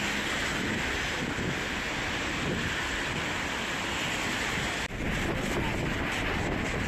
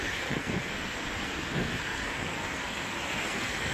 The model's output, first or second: second